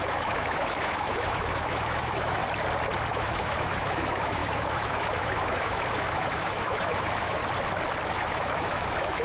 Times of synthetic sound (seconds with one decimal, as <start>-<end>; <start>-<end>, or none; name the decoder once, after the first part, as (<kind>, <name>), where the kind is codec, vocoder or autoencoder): 0.0-2.4 (autoencoder, DAC-VAE); 3.1-7.4; 8.1-9.2

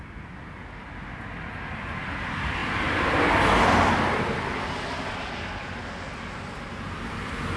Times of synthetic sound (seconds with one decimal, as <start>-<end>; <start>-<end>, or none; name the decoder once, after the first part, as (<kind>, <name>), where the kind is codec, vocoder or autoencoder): none